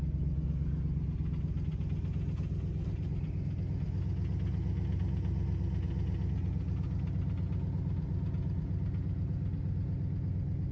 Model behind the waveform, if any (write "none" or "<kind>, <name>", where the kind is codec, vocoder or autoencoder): none